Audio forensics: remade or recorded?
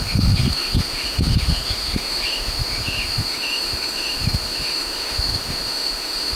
remade